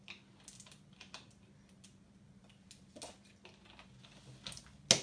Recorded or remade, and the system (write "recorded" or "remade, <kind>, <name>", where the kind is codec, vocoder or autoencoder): recorded